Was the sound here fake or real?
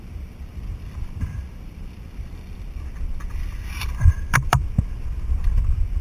fake